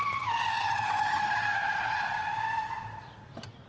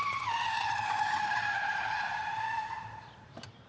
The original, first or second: first